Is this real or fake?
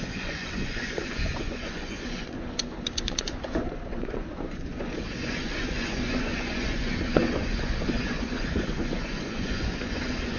fake